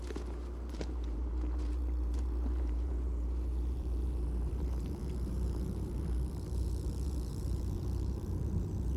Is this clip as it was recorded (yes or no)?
no